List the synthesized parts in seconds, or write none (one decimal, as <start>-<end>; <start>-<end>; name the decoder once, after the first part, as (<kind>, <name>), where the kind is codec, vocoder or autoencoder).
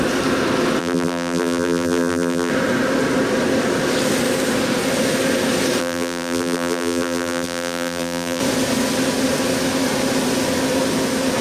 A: 0.8-2.5 (vocoder, BigVGAN v2); 5.8-8.4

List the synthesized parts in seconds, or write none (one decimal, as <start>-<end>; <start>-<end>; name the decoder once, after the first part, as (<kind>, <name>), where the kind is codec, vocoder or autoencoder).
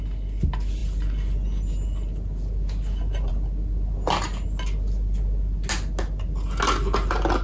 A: none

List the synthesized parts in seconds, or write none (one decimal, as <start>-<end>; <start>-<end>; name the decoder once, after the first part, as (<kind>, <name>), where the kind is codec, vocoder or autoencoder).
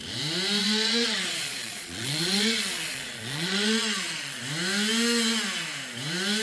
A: 0.6-4.4 (vocoder, Vocos)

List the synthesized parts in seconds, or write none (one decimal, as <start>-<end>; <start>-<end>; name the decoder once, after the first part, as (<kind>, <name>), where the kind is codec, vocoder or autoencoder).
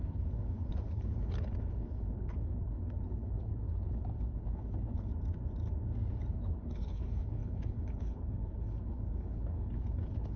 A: 0.0-5.1 (codec, HILCodec); 6.3-10.4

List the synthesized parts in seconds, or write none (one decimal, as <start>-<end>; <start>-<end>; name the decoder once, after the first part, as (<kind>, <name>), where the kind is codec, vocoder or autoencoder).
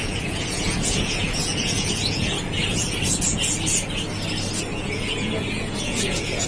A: 0.0-3.9 (vocoder, Vocos); 4.7-6.5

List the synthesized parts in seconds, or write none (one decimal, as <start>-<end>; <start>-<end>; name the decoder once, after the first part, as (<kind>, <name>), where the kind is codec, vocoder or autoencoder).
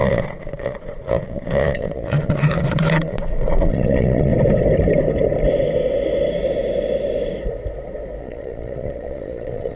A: 0.0-4.3 (vocoder, Vocos); 8.2-9.8